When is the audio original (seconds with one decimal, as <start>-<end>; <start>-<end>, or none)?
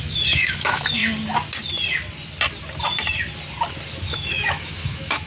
1.0-3.9